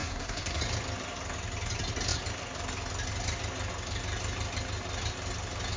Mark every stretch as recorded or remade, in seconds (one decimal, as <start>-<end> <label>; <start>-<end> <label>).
0.0-0.6 remade; 0.6-5.8 recorded